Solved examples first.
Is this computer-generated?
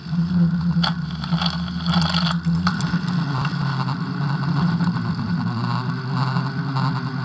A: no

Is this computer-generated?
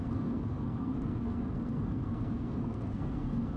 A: yes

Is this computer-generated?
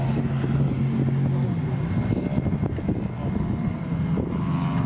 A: no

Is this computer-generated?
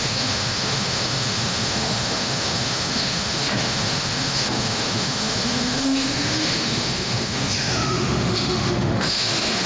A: yes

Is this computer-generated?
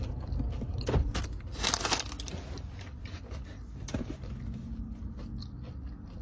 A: no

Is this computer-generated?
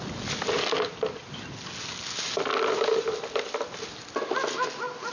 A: no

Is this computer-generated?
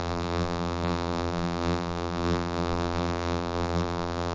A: yes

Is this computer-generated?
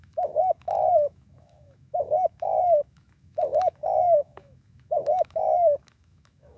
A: yes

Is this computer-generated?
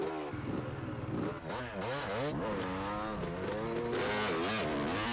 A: no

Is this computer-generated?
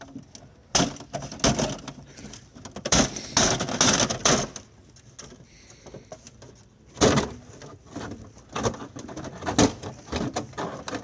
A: no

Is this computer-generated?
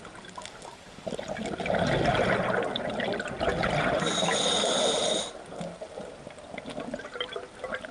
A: no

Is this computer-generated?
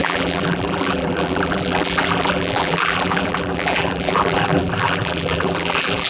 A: yes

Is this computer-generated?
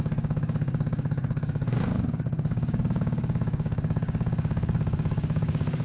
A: yes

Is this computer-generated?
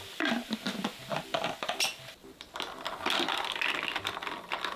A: no